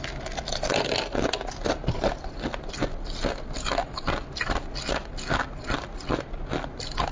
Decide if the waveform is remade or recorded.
recorded